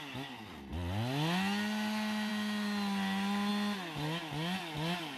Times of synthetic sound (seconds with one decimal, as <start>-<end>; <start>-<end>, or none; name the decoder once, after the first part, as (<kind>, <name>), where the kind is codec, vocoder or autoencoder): none

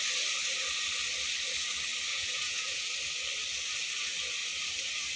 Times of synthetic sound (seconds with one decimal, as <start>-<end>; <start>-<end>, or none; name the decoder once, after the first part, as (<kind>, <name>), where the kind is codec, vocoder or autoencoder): 2.1-2.9 (vocoder, Vocos)